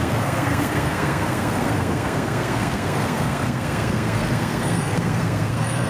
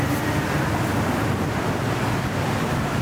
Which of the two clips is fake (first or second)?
first